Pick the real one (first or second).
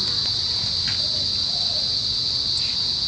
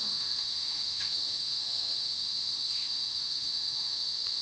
first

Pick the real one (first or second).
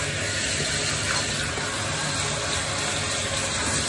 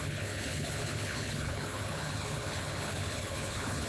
first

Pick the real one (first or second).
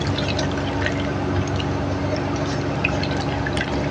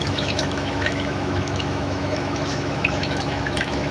first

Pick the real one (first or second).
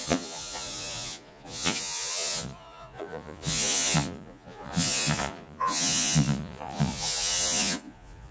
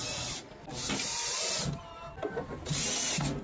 second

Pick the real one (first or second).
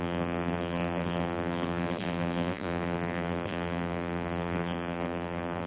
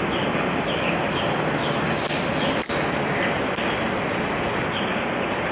second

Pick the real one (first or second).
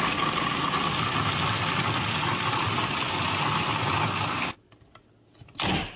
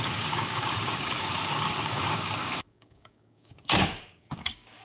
first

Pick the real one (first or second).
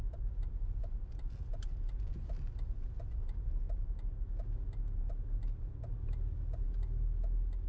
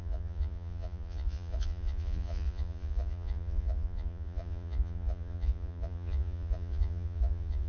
first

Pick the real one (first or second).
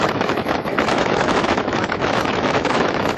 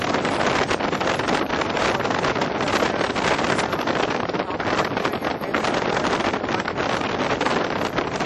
second